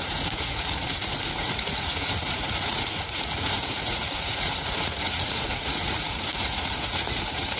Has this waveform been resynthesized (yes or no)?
yes